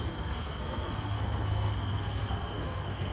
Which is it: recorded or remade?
remade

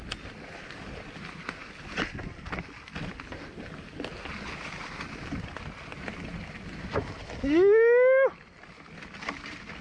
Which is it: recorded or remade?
recorded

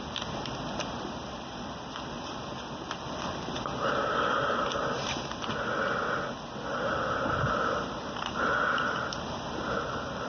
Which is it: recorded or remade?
recorded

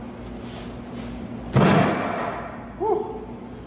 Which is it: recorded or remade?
recorded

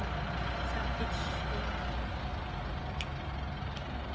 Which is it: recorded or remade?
recorded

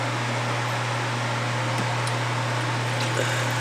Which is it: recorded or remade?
recorded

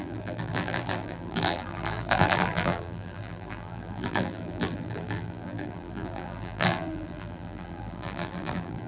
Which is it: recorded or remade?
remade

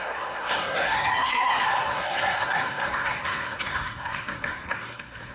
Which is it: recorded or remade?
remade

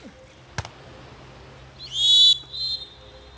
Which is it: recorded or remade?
recorded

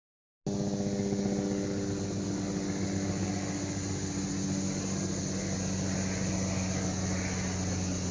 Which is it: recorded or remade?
recorded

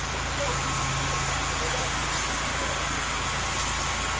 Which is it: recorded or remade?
recorded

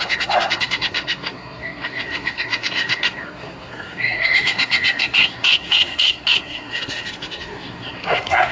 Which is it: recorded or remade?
remade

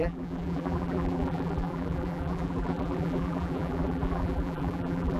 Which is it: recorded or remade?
remade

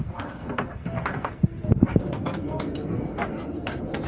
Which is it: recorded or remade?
remade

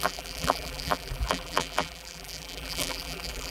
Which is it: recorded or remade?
remade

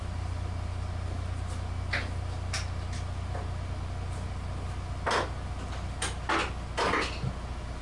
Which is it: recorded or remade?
recorded